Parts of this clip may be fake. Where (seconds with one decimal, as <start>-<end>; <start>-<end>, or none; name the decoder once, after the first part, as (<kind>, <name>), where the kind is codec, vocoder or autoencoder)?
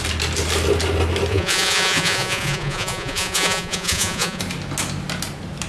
1.3-4.4 (vocoder, Vocos)